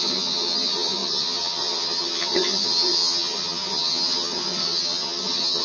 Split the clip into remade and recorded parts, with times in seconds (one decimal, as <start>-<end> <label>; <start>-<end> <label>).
0.0-5.6 remade